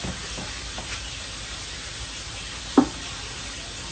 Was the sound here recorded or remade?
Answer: recorded